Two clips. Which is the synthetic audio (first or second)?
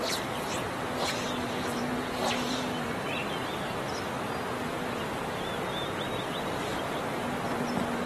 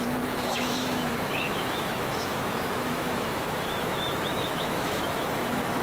second